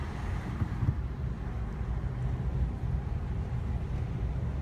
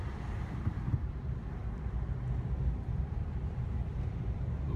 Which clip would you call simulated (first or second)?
second